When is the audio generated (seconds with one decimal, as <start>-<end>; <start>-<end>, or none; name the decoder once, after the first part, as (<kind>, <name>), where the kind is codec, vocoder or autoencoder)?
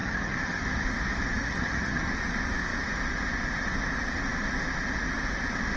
0.0-0.6 (vocoder, HiFi-GAN); 1.4-2.1